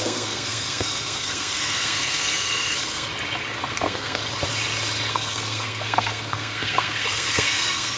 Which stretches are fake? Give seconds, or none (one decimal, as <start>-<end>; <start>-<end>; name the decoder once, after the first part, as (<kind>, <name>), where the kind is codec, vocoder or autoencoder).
0.0-3.1 (codec, SNAC); 3.7-4.2; 5.1-8.0